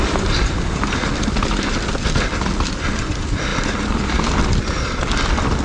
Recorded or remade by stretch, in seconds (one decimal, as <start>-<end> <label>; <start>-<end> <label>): 0.0-5.6 recorded